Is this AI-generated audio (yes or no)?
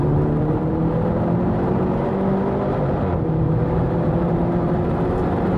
yes